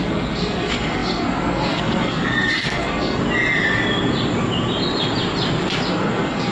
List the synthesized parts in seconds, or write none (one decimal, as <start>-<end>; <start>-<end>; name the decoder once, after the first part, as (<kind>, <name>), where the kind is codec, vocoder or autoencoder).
0.0-3.2 (codec, SNAC); 5.9-6.5

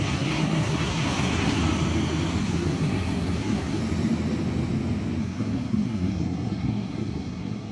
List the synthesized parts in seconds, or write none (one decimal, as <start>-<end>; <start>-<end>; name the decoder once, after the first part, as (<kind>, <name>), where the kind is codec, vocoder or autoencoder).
0.0-1.6 (codec, SNAC); 2.4-3.8; 5.2-7.7

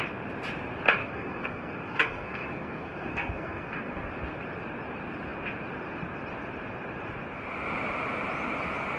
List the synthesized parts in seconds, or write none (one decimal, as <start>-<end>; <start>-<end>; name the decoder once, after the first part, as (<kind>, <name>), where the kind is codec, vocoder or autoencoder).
1.0-4.1 (codec, SNAC)